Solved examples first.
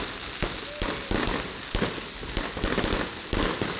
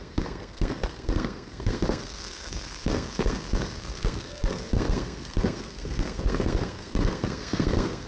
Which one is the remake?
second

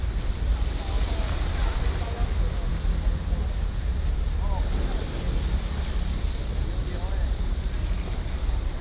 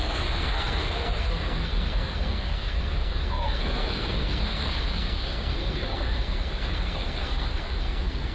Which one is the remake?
second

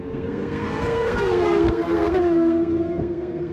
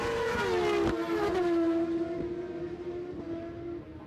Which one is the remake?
first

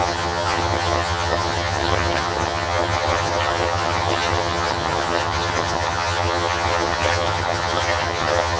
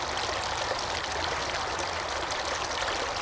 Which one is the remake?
first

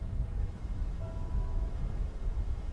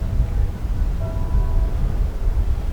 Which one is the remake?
first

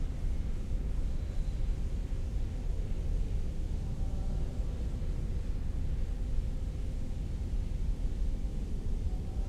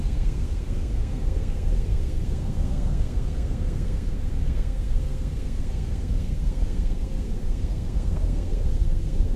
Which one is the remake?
second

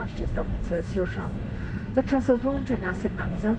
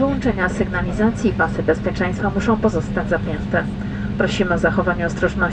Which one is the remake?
first